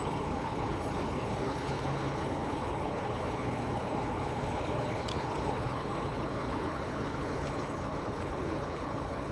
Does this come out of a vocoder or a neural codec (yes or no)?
yes